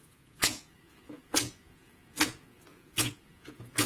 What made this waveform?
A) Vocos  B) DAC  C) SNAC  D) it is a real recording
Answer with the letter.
A